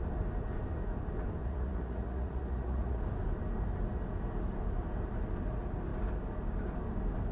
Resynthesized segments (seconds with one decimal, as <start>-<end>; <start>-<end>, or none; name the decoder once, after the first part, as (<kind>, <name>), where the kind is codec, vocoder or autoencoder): 1.4-3.0 (vocoder, Vocos)

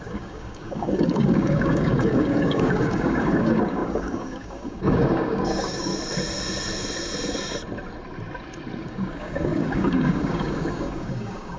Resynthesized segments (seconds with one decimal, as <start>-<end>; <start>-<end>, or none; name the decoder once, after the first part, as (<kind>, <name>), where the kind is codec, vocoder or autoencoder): 0.0-5.9 (codec, DAC); 8.8-11.6

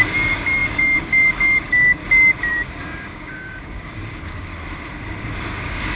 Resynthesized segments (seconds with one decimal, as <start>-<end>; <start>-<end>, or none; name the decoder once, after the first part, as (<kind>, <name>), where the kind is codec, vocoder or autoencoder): 0.0-2.0 (codec, DAC); 2.5-4.5; 5.2-6.0

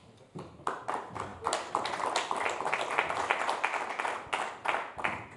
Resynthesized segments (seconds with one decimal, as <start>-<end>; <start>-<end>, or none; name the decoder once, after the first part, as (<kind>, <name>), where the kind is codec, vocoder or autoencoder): none

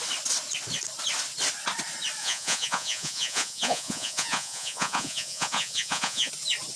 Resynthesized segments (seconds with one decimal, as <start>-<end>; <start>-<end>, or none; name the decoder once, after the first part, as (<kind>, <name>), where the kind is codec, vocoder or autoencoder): 2.2-6.3 (vocoder, Vocos)